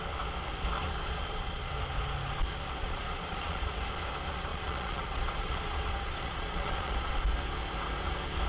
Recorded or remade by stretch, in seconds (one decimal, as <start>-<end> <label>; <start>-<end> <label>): 0.0-1.0 recorded; 1.0-1.7 remade; 1.7-2.8 recorded; 2.8-3.7 remade; 3.7-4.5 recorded; 4.5-7.1 remade; 7.1-8.5 recorded